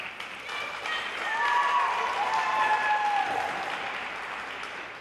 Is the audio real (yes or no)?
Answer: yes